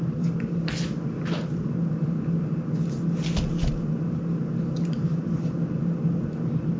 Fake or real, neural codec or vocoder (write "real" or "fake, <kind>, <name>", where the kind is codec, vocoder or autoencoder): real